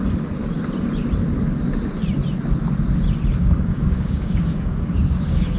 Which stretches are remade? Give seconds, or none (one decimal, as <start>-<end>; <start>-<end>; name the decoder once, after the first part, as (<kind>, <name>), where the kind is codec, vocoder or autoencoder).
3.4-5.6 (codec, DAC)